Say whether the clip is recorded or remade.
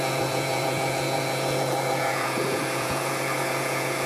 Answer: remade